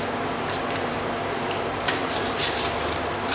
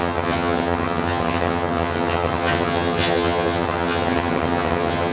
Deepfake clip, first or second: second